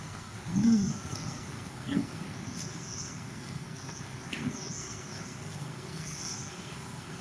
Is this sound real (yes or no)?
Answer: no